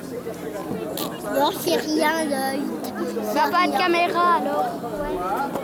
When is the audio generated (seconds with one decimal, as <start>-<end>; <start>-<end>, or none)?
none